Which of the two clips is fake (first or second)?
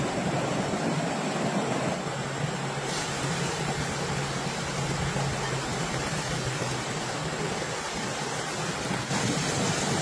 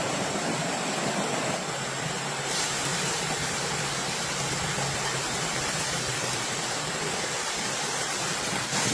second